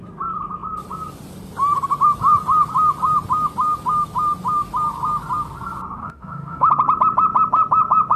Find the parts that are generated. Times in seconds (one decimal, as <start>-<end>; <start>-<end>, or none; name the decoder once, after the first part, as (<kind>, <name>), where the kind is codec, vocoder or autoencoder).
6.0-6.7 (autoencoder, DAC-VAE)